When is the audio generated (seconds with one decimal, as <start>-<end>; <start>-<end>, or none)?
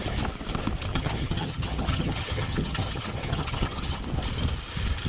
0.9-4.0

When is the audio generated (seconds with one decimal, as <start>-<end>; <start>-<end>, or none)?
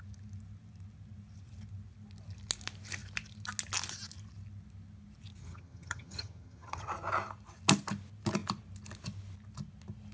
5.4-6.9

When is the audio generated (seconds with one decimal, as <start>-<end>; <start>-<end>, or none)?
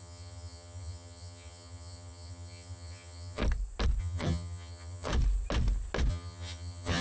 0.0-3.4; 4.0-5.1; 6.1-7.0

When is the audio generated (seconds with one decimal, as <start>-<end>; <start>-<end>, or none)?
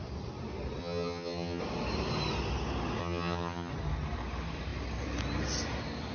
0.8-1.6; 3.0-3.7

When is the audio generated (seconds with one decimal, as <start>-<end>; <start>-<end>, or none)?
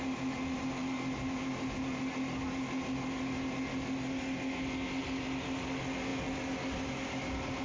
none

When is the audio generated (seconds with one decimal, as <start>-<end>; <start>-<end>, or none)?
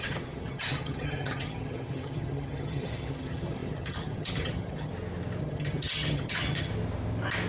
0.0-4.9; 5.4-6.7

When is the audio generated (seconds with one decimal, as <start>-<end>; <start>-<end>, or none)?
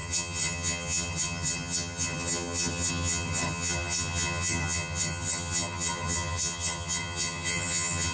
0.0-8.1